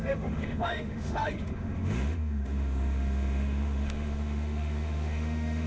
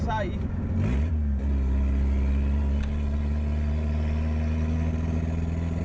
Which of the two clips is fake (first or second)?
first